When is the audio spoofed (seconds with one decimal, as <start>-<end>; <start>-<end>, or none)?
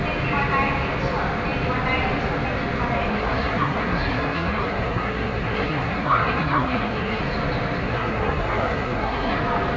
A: 3.1-7.2; 7.8-9.4